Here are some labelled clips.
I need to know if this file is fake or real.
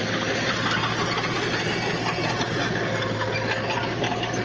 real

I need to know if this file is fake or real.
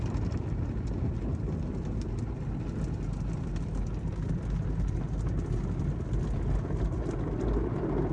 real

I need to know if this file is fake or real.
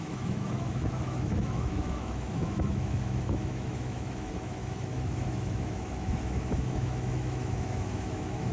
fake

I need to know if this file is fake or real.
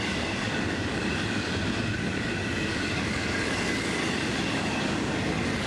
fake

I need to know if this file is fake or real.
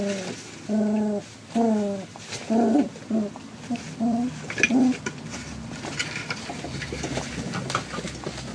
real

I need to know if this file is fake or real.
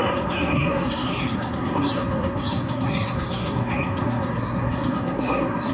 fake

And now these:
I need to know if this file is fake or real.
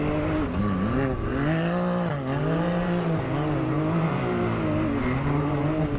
real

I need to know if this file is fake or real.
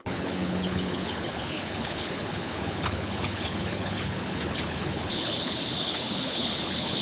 fake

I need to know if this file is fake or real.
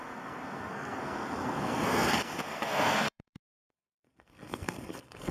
fake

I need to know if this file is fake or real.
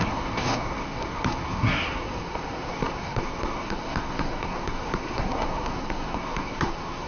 fake